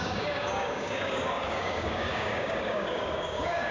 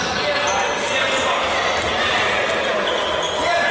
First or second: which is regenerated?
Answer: first